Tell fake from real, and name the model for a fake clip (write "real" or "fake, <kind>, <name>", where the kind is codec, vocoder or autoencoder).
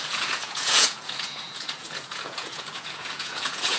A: fake, vocoder, Vocos